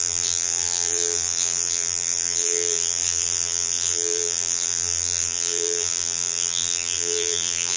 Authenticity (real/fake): fake